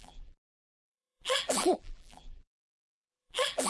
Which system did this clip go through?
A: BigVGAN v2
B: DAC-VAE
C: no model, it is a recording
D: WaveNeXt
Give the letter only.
A